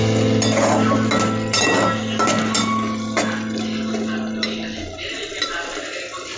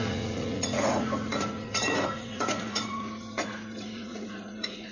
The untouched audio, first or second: first